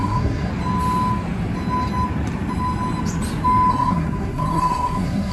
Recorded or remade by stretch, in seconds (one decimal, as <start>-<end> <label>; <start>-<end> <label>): 0.0-0.5 remade; 0.5-3.7 recorded; 3.7-5.3 remade